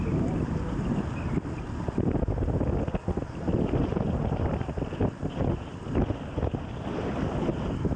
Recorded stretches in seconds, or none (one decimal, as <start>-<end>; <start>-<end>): 0.0-3.2; 4.5-8.0